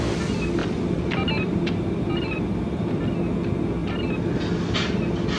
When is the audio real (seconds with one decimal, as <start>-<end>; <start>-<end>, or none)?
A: 0.0-0.6; 3.0-5.4